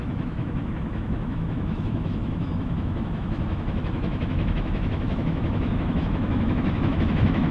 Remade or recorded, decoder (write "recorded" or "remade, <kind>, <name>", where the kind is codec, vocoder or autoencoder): remade, autoencoder, DAC-VAE